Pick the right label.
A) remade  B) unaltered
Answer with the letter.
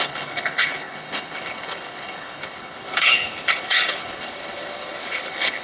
A